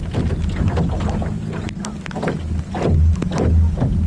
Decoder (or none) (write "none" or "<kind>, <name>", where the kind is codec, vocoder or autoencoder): none